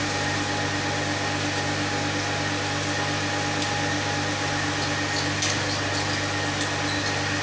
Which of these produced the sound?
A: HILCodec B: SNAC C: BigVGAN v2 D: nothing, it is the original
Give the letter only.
D